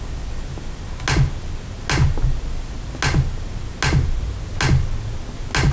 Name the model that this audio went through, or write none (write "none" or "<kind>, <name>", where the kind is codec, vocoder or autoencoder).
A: none